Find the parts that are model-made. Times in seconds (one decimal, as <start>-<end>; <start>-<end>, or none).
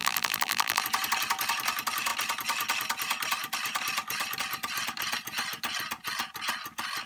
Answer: 0.0-0.8